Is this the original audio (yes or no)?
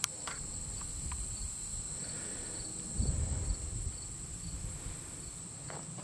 yes